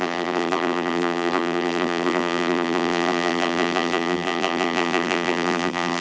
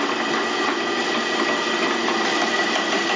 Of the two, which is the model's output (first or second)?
first